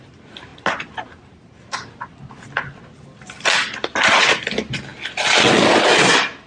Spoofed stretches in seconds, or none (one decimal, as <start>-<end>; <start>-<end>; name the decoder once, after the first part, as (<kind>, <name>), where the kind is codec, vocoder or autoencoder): none